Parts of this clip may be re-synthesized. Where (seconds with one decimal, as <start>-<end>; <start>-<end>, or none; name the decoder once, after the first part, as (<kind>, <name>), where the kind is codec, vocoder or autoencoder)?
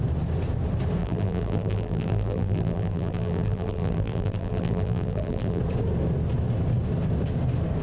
1.0-5.6 (vocoder, BigVGAN v2)